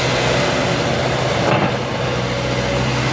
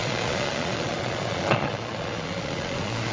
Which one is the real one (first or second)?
first